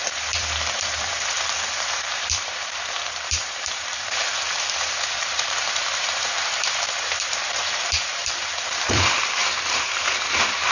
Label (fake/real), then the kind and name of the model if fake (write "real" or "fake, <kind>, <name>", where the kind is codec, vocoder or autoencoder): fake, vocoder, BigVGAN v2